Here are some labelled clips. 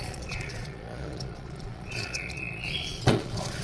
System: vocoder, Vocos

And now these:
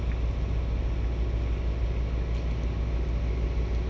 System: none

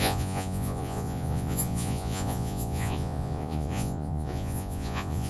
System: vocoder, Vocos